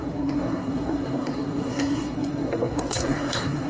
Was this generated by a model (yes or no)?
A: yes